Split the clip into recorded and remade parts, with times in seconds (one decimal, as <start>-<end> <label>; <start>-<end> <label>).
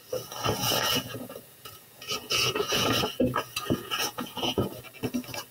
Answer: 0.0-0.6 recorded; 0.6-2.9 remade; 2.9-3.8 recorded; 3.8-4.7 remade; 4.7-5.5 recorded